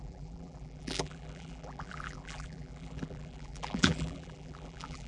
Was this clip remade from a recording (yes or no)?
yes